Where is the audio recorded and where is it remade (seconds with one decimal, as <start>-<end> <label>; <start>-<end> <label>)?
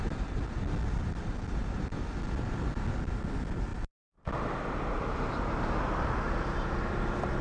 0.0-1.6 remade; 1.6-3.2 recorded; 3.2-3.7 remade; 3.7-6.0 recorded; 6.0-7.4 remade